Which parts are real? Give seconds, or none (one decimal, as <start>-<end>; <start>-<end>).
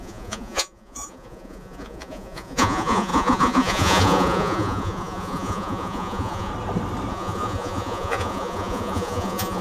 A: 6.5-7.1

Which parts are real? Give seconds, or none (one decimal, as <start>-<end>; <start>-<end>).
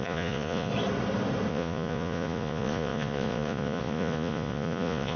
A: 0.7-1.5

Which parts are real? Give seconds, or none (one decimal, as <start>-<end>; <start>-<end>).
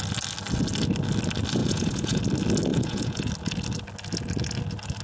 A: 0.0-1.6; 2.2-2.7; 3.3-5.0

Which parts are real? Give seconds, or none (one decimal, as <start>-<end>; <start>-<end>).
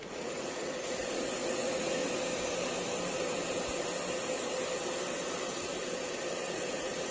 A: 2.0-6.3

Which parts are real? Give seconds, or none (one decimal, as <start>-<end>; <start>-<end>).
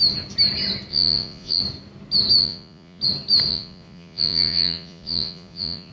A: 0.0-0.9; 1.6-2.4; 3.0-3.5